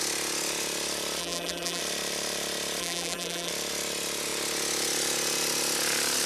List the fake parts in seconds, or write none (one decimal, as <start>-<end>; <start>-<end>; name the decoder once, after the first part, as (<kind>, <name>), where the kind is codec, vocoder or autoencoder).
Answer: 1.2-1.8 (vocoder, BigVGAN v2); 2.8-3.5